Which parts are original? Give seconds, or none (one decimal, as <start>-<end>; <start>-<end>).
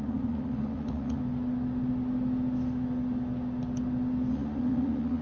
1.2-4.3